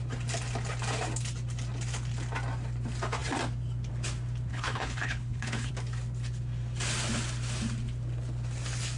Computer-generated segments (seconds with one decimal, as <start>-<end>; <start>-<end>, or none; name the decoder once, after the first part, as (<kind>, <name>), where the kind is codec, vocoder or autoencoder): 4.5-5.7 (codec, HILCodec)